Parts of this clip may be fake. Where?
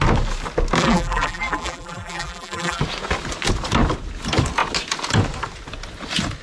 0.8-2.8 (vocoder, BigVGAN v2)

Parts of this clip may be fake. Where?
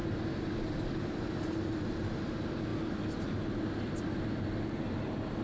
0.0-2.0 (vocoder, BigVGAN v2)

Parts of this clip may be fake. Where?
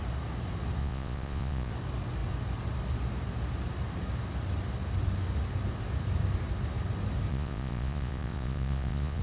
0.8-1.7 (vocoder, Vocos); 7.3-9.2